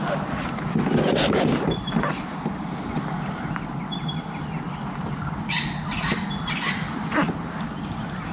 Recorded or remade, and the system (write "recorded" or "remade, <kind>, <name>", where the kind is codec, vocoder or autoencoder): recorded